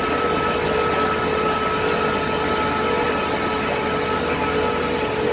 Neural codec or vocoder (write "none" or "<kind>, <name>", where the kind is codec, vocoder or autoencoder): none